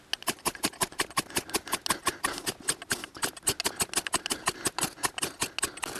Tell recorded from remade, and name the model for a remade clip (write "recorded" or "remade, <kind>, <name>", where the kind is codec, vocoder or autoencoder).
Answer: recorded